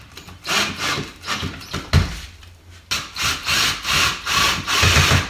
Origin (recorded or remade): recorded